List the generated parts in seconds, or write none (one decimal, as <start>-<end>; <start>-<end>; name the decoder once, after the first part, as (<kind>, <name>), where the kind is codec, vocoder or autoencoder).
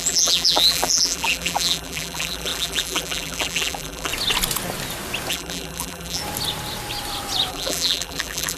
0.0-4.1 (vocoder, BigVGAN v2); 5.3-6.2; 7.5-8.6